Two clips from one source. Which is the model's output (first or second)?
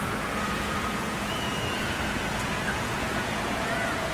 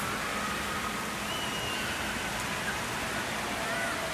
first